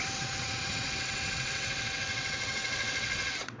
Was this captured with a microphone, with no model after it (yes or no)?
no